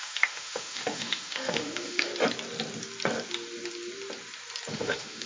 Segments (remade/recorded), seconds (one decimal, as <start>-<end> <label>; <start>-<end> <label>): 0.0-2.1 remade; 2.1-4.7 recorded; 4.7-5.3 remade